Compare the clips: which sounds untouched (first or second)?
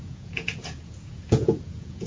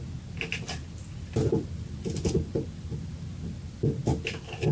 second